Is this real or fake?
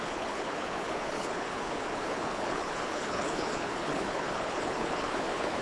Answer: fake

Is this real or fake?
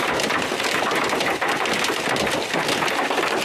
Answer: real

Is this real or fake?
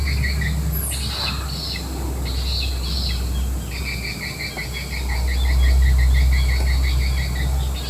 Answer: real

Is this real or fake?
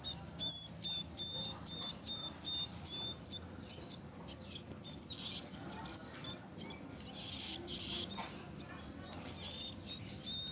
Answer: real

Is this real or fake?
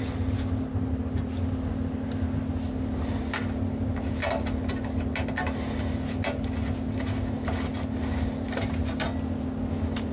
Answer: real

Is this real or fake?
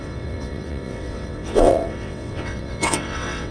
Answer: fake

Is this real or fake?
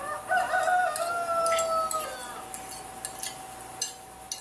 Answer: real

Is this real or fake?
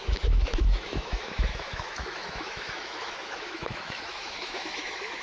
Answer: fake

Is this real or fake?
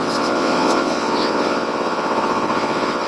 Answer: fake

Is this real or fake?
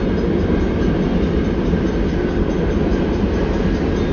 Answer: real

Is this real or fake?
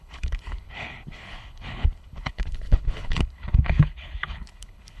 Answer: fake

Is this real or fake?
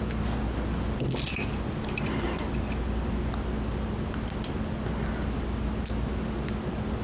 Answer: real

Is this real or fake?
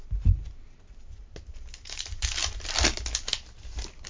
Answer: real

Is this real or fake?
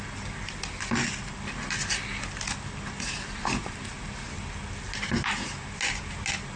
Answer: real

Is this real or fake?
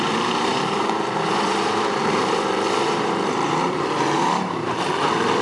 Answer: fake